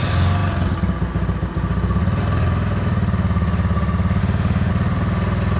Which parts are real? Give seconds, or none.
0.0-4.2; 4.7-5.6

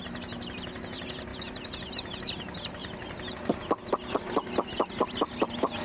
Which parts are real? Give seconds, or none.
0.0-2.8; 3.6-5.8

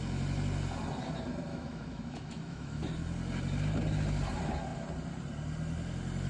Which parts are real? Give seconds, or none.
0.0-1.5; 2.8-6.3

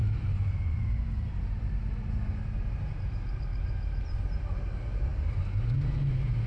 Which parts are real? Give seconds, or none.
0.0-6.5

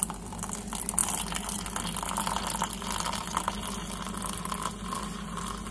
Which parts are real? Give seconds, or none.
0.0-5.7

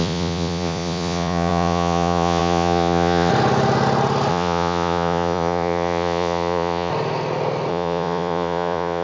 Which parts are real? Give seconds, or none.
3.3-4.3; 6.9-7.7